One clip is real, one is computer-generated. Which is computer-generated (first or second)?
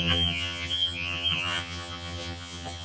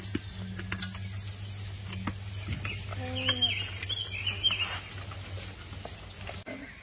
first